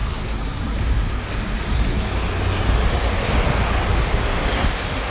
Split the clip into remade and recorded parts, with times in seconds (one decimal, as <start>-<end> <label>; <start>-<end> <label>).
0.0-5.1 recorded